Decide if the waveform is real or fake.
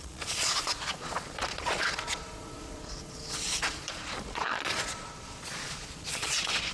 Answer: fake